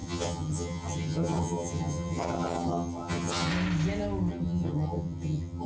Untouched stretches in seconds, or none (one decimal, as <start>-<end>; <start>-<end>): 3.5-4.3